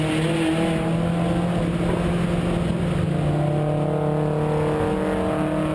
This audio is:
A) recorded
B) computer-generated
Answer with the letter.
A